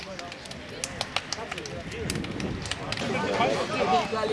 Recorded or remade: recorded